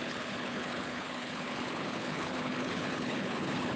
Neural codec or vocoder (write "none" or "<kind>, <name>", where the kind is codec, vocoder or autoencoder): codec, HILCodec